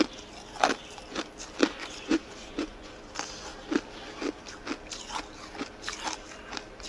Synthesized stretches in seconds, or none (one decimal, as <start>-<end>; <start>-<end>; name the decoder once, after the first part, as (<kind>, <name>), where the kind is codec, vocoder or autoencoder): 1.8-3.1 (vocoder, Vocos)